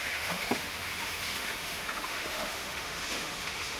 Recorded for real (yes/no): no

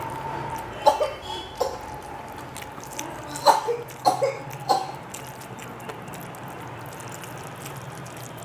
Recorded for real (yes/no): yes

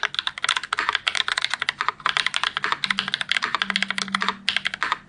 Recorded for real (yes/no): yes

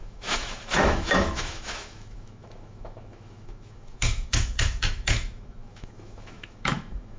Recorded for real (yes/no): no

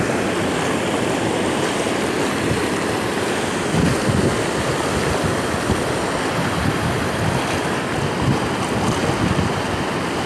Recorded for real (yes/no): yes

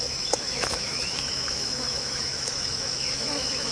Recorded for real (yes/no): no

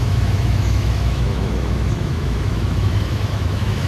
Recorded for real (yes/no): no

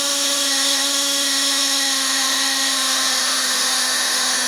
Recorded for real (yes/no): no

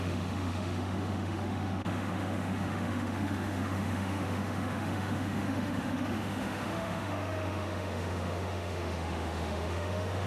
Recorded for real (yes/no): no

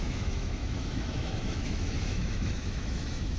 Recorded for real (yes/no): no